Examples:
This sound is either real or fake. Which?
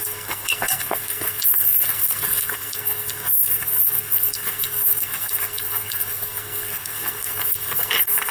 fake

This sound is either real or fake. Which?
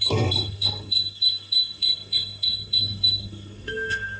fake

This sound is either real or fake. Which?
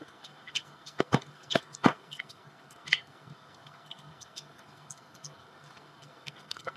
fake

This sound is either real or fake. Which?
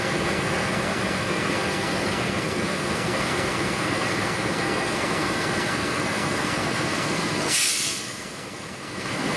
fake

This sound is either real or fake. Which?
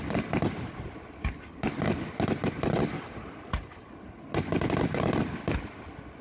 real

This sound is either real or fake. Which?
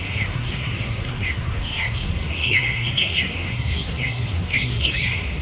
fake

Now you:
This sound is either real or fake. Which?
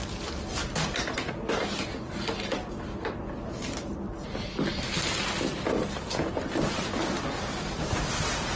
real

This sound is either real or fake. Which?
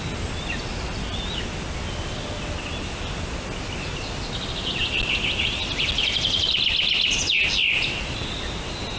real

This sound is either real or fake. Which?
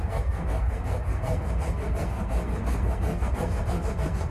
fake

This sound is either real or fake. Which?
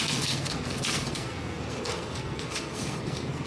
fake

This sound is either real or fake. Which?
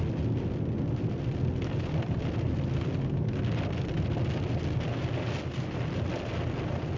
real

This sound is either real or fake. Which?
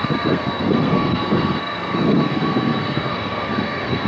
fake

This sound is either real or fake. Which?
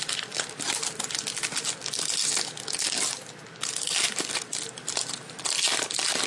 real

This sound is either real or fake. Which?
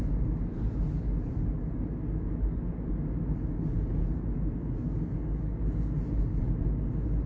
real